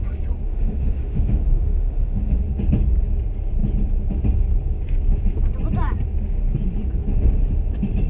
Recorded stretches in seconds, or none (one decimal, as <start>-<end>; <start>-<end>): 0.0-0.5; 2.4-8.1